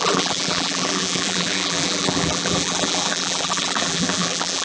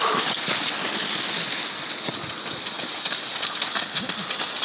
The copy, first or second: first